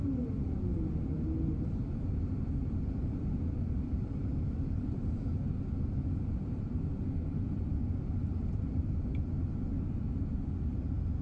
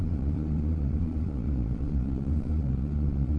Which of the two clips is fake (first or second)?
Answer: second